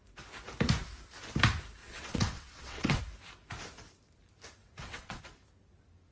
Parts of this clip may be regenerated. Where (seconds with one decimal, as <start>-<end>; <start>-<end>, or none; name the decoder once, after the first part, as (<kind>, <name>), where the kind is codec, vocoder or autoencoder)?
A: 1.8-3.0 (vocoder, WaveNeXt); 4.6-5.2